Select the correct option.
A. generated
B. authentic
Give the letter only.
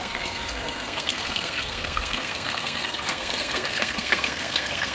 A